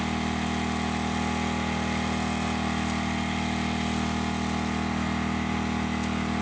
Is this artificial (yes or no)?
no